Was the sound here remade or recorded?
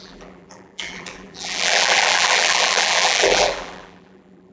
remade